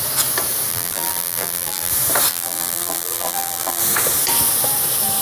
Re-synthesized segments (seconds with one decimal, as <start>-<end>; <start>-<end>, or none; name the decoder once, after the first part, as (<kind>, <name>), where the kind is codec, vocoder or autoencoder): 0.7-1.9 (vocoder, BigVGAN v2); 2.3-3.8